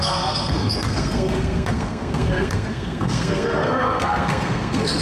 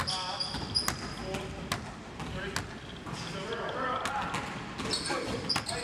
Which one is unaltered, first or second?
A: second